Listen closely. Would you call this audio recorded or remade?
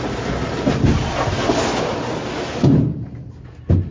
recorded